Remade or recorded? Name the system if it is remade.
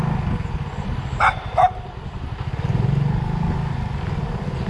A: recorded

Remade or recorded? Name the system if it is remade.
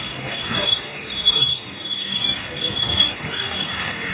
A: remade, codec, DAC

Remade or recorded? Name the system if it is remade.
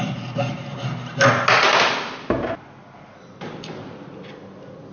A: recorded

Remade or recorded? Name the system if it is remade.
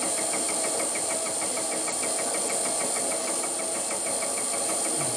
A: recorded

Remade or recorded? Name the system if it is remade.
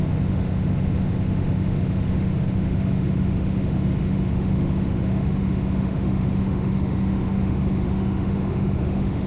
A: remade, autoencoder, DAC-VAE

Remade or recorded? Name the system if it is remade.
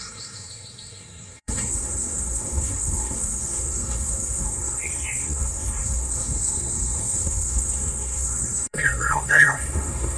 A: remade, codec, SNAC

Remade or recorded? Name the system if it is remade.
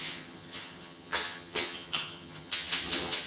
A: remade, vocoder, HiFi-GAN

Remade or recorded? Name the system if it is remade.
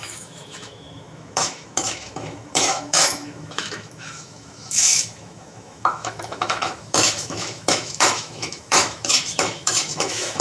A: remade, autoencoder, DAC-VAE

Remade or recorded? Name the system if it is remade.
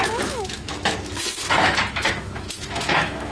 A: remade, autoencoder, DAC-VAE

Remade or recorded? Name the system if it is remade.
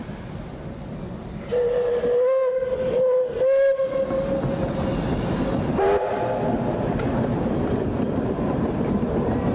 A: recorded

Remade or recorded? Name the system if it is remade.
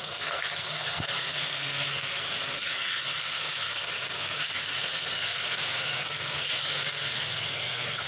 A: remade, codec, SNAC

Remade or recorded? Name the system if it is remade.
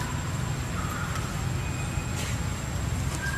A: recorded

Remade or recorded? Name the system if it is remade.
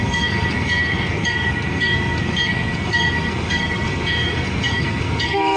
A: remade, codec, SNAC